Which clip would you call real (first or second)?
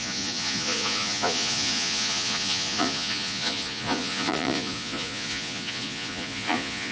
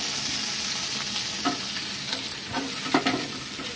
second